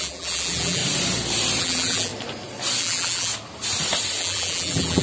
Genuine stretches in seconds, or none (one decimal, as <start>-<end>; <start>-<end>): 0.8-1.6; 2.1-2.8; 3.3-4.2